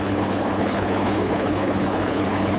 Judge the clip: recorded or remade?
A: remade